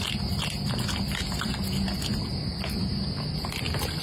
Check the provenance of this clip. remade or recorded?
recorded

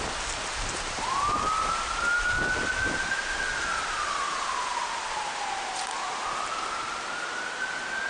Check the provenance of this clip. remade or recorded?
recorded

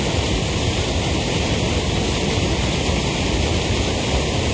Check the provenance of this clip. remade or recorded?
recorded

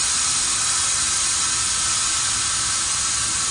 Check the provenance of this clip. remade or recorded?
recorded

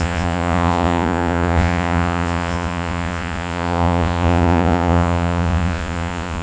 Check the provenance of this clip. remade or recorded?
remade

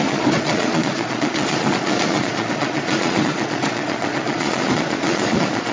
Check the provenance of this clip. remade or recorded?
remade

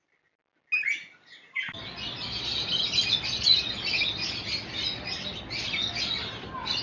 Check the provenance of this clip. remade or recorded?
recorded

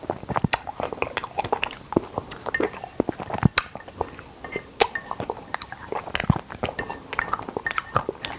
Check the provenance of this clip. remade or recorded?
recorded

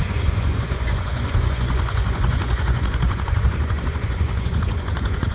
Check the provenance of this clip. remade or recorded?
remade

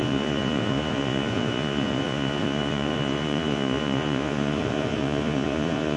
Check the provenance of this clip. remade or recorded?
remade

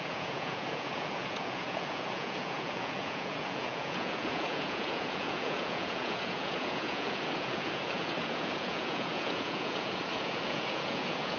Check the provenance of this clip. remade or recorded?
remade